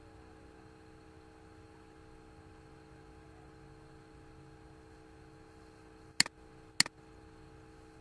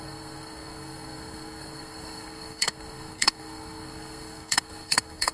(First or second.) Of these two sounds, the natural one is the first